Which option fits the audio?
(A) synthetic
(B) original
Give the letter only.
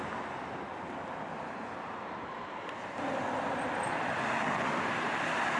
B